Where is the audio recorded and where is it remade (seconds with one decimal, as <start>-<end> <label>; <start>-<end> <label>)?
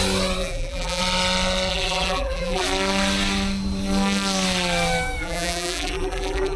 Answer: 0.0-0.4 recorded; 0.4-1.0 remade; 1.0-1.7 recorded; 1.7-2.6 remade; 2.6-5.2 recorded; 5.2-6.6 remade